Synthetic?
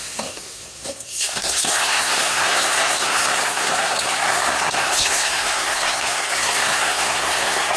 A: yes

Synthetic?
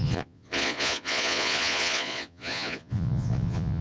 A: yes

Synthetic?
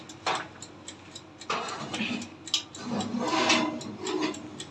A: no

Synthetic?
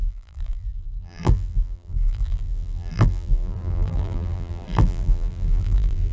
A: yes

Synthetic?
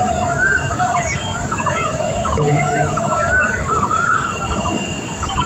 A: yes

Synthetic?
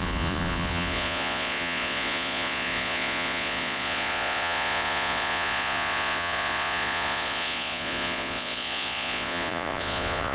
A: yes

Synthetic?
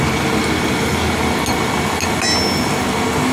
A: no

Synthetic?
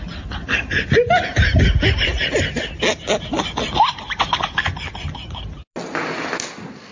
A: no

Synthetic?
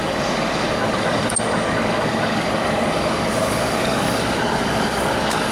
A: yes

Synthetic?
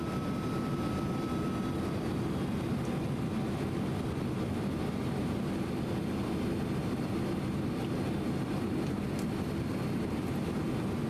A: no